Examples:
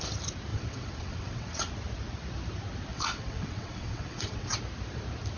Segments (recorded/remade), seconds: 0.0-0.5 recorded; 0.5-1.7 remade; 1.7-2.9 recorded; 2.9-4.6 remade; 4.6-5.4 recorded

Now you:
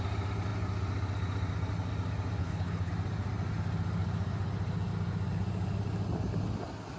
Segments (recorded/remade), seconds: 0.0-2.4 recorded; 2.4-2.9 remade; 2.9-7.0 recorded

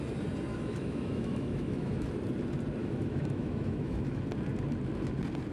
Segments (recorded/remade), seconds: 0.0-0.5 recorded; 0.5-2.1 remade; 2.1-2.8 recorded; 2.8-4.2 remade; 4.2-5.5 recorded

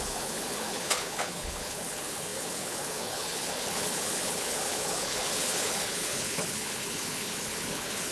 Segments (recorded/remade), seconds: 0.0-8.1 remade